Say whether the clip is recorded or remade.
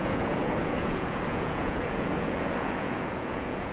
remade